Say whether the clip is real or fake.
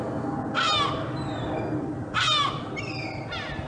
real